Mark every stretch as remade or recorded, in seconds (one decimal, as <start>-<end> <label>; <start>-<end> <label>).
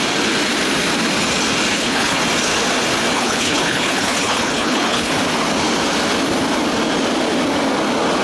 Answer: 0.0-1.7 recorded; 1.7-2.2 remade; 2.2-3.1 recorded; 3.1-5.1 remade; 5.1-8.2 recorded